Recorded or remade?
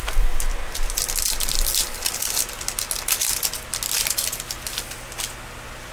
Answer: recorded